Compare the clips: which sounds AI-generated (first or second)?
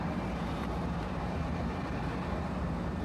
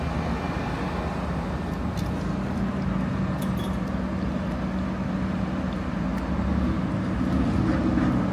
first